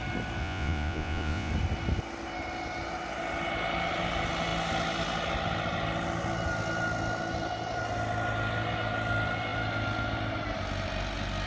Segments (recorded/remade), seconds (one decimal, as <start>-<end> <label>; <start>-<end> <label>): 0.0-0.4 recorded; 0.4-1.5 remade; 1.5-11.5 recorded